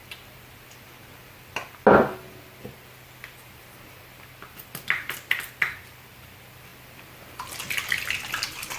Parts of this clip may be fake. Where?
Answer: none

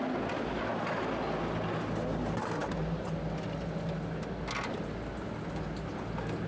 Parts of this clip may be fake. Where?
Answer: none

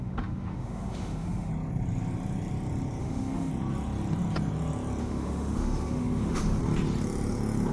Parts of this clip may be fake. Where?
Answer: 0.0-1.5 (autoencoder, DAC-VAE); 3.0-3.5; 5.0-6.6